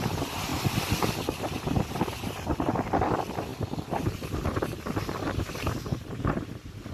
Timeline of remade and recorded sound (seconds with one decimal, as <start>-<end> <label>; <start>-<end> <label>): 0.0-6.9 recorded